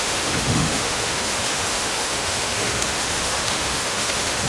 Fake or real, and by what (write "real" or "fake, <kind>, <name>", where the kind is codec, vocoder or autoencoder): fake, autoencoder, DAC-VAE